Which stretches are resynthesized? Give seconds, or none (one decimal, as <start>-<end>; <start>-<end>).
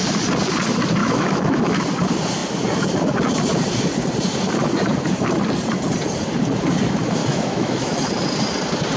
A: 1.0-1.8; 7.2-8.0